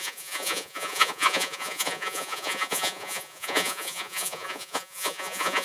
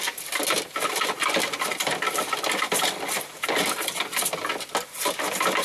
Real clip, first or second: second